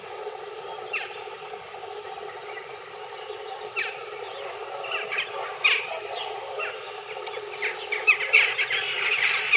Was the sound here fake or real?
real